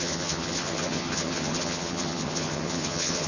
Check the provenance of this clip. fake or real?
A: fake